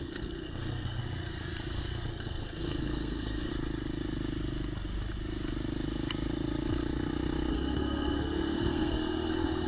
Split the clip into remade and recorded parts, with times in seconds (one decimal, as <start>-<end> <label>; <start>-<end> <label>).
0.0-1.0 remade; 1.0-2.1 recorded; 2.1-3.5 remade; 3.5-7.5 recorded; 7.5-9.7 remade